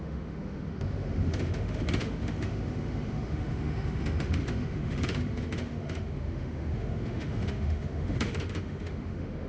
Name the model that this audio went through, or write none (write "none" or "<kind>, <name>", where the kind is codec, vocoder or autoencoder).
autoencoder, DAC-VAE